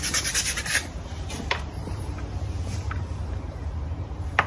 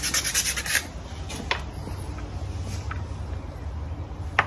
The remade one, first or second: first